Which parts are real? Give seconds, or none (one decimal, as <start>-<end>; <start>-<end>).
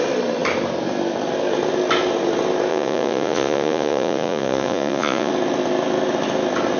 0.0-2.7; 5.3-6.8